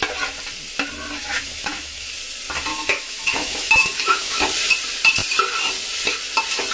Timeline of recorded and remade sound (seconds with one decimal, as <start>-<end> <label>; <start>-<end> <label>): 0.0-1.3 recorded; 1.3-2.1 remade; 2.1-2.7 recorded; 2.7-4.4 remade; 4.4-6.7 recorded

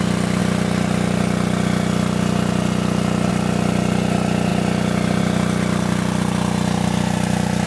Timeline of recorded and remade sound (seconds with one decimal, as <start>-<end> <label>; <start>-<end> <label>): 0.0-7.7 recorded